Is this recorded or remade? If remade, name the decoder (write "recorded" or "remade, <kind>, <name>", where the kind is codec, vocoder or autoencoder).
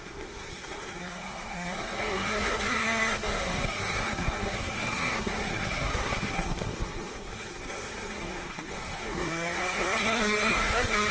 remade, codec, SNAC